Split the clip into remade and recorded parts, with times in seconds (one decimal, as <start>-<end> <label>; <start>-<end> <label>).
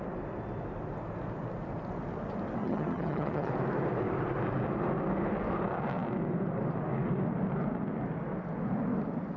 0.0-2.6 recorded; 2.6-3.5 remade; 3.5-9.4 recorded